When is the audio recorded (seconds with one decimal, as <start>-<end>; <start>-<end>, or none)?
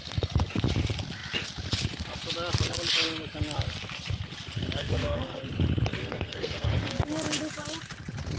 0.0-4.8; 5.4-6.0; 6.9-8.4